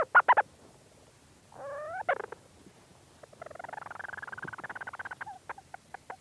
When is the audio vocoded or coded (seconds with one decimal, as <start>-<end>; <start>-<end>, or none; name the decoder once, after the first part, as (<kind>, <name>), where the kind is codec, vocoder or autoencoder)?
none

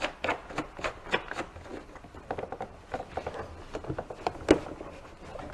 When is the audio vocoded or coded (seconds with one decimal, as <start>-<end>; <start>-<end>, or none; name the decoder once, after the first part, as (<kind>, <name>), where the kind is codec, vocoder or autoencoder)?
none

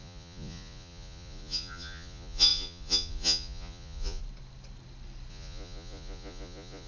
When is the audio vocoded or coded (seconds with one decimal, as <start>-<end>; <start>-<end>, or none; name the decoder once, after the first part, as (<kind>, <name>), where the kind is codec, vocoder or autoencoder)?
0.0-4.2 (vocoder, Vocos); 5.3-6.9

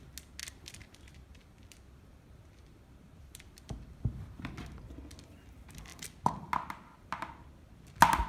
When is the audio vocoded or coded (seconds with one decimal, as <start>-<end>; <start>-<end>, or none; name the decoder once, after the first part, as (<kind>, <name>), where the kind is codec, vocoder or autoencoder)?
0.4-0.9 (vocoder, BigVGAN v2); 1.3-4.5

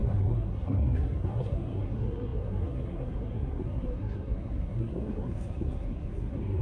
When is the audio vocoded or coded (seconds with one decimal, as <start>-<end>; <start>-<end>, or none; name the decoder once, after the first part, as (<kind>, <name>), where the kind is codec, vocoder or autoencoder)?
0.0-6.6 (codec, SNAC)

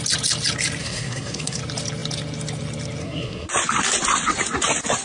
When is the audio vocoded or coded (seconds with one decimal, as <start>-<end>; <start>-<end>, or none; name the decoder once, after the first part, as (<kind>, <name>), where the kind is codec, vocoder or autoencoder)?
0.8-1.6 (codec, SNAC); 3.0-3.5